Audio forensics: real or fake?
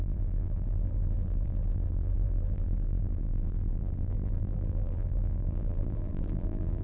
fake